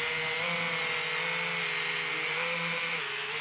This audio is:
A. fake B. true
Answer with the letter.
B